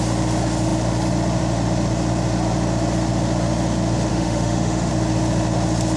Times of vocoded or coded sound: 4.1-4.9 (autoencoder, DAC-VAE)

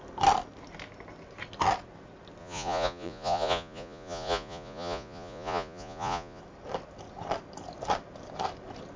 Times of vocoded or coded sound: 2.4-6.4 (vocoder, Vocos)

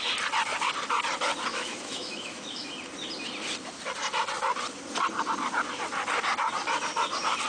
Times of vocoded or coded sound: 1.5-2.7 (autoencoder, DAC-VAE)